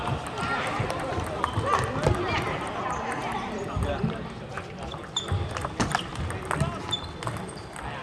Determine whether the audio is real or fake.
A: real